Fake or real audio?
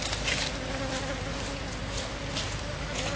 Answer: real